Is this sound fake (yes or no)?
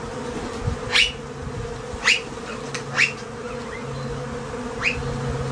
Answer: no